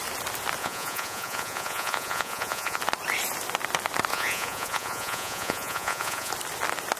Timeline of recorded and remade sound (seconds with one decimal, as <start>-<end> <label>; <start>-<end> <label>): 0.0-0.6 recorded; 0.6-2.8 remade; 2.8-4.1 recorded; 4.1-6.3 remade; 6.3-7.0 recorded